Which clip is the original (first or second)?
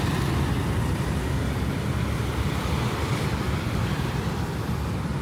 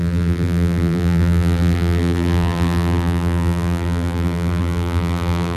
first